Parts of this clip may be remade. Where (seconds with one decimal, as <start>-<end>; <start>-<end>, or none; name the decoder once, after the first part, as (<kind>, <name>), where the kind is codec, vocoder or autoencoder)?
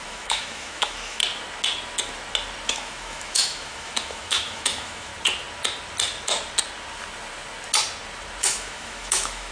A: 0.0-1.2 (autoencoder, DAC-VAE); 2.7-5.1; 8.4-9.5